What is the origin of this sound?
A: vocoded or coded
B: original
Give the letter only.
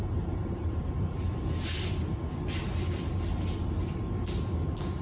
B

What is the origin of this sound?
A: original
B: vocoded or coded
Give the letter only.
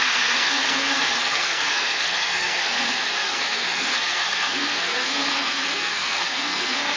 B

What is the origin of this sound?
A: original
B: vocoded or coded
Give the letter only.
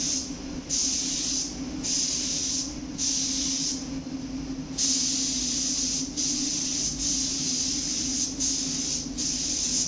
A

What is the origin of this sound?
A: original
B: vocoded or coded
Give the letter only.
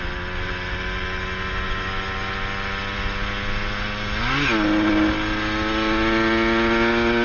A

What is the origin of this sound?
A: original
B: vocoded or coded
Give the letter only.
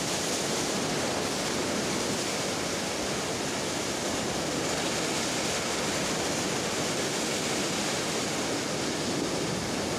A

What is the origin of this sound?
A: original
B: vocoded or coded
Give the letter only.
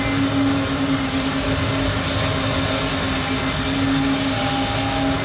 A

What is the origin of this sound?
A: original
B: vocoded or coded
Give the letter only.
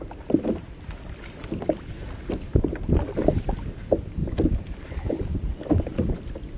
A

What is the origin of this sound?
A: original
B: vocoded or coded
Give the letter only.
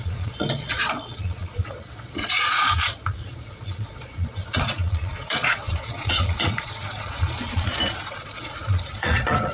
B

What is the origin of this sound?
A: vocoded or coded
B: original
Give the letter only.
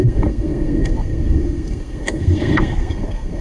A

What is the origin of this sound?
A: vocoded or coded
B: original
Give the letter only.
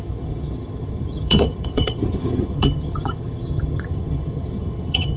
A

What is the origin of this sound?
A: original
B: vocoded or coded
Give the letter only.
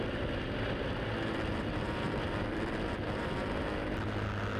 A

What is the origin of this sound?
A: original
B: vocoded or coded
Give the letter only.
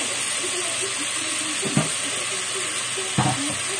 A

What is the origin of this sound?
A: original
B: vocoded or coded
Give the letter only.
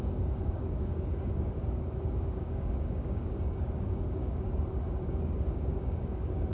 B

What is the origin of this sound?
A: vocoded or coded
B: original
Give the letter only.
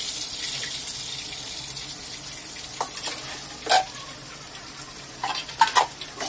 B